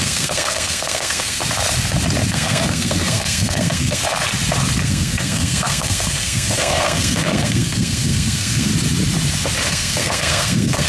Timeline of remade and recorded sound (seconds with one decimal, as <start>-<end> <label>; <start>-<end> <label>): 0.0-1.4 remade; 1.4-2.3 recorded; 2.3-4.0 remade; 4.0-4.8 recorded; 4.8-8.7 remade; 8.7-9.7 recorded; 9.7-10.9 remade